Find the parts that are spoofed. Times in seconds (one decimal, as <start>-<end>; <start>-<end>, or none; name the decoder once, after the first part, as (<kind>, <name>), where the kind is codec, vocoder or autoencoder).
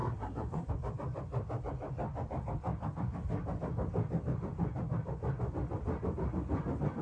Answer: 0.0-0.7 (codec, SNAC)